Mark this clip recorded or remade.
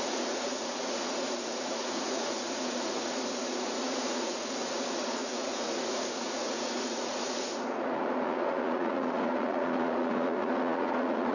remade